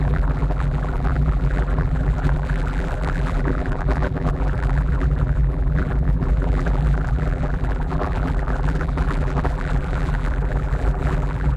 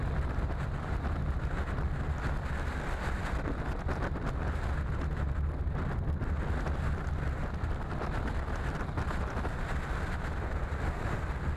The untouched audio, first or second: second